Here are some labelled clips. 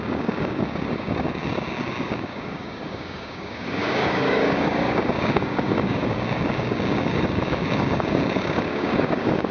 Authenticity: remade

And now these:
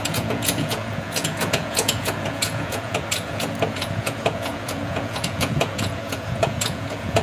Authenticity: remade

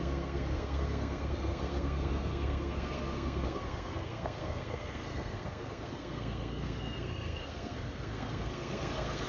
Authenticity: remade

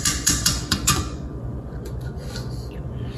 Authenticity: remade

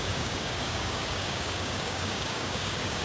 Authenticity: remade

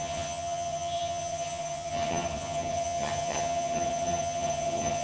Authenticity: remade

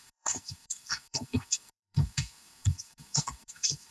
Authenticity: remade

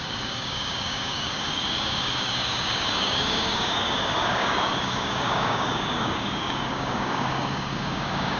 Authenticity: remade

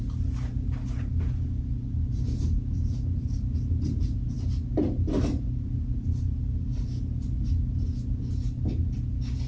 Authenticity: recorded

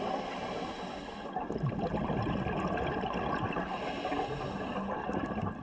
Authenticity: recorded